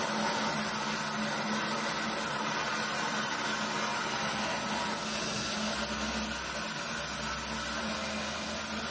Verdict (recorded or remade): recorded